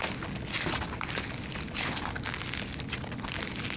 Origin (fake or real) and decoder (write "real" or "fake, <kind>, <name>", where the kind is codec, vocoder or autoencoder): real